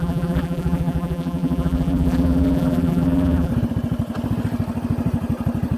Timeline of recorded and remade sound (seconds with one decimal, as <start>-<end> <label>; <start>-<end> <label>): 0.0-3.5 remade; 3.5-5.8 recorded